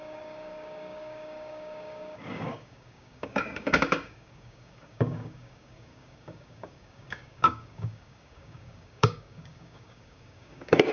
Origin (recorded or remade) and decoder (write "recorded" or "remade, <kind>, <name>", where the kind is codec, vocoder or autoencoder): remade, codec, DAC